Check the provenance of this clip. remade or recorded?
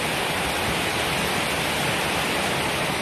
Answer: remade